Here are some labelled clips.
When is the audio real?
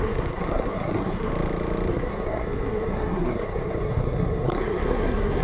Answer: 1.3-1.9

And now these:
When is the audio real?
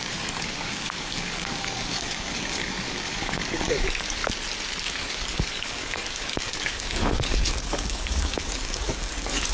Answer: 4.2-4.8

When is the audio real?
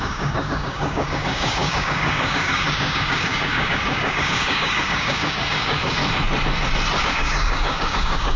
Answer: 6.0-7.0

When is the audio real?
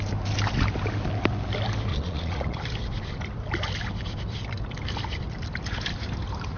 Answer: 0.0-1.9; 2.6-6.6